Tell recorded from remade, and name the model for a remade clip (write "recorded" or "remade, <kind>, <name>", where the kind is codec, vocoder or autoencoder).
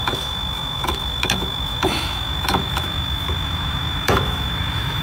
remade, autoencoder, DAC-VAE